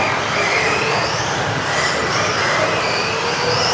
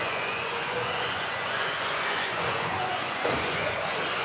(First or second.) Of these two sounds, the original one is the first